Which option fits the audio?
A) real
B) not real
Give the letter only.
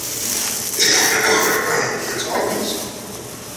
A